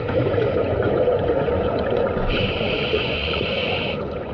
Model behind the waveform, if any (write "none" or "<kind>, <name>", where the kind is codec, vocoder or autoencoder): vocoder, Vocos